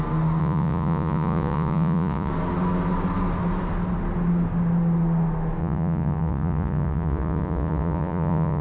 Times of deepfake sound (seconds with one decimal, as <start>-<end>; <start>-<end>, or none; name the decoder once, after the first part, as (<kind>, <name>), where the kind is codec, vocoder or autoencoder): 0.4-2.3 (vocoder, Vocos); 5.6-8.6